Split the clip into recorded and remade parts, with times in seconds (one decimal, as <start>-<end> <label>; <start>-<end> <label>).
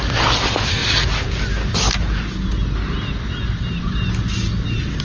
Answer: 0.0-5.0 recorded